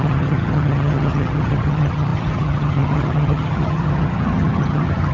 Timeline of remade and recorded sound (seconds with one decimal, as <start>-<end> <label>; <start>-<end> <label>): 0.0-5.1 remade